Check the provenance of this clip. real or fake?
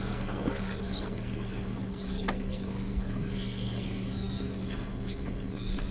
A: fake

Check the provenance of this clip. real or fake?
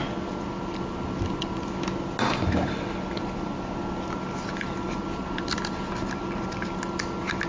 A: real